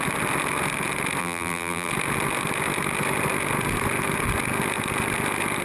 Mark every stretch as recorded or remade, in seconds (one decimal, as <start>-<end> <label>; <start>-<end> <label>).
0.0-1.2 recorded; 1.2-1.9 remade; 1.9-5.6 recorded